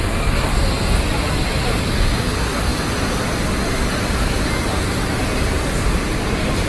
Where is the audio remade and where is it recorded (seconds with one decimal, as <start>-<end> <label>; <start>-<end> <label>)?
0.0-6.7 recorded